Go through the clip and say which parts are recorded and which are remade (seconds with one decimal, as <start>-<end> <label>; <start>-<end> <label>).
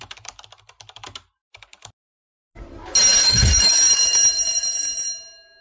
0.0-3.2 recorded; 3.2-3.9 remade; 3.9-5.6 recorded